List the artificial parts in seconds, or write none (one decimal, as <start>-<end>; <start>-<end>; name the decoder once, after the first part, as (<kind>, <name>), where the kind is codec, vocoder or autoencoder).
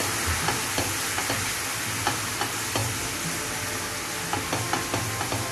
none